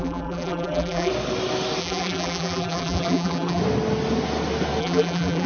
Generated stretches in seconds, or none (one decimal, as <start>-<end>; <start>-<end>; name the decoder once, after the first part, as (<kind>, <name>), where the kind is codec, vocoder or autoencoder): 0.0-1.1 (vocoder, BigVGAN v2); 1.8-3.6; 4.8-5.5